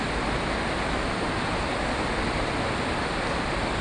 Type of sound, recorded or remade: recorded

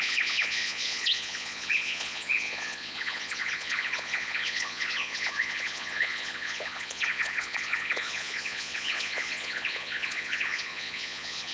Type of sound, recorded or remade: remade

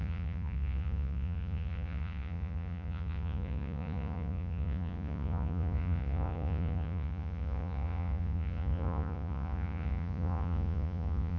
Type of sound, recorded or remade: remade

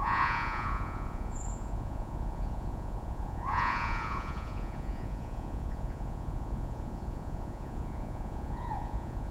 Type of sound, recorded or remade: remade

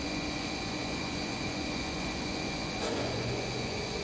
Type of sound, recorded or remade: remade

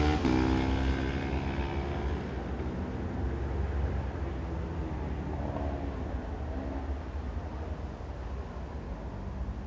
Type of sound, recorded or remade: recorded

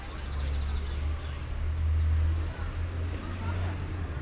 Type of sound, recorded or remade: recorded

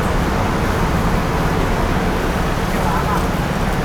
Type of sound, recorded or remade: recorded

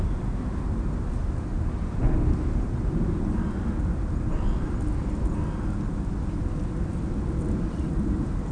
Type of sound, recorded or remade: recorded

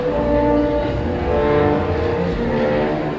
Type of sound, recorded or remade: recorded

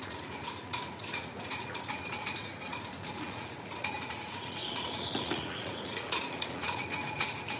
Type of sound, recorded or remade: remade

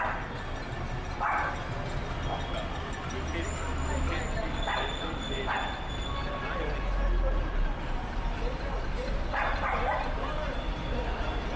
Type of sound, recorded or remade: recorded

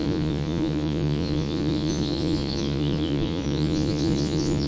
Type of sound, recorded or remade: remade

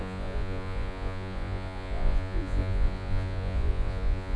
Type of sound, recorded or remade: remade